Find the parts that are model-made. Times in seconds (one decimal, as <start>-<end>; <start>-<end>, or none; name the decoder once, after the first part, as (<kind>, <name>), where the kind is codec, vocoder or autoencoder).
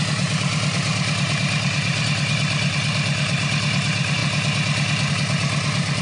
none